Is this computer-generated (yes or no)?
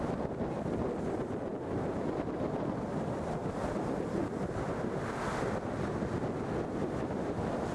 no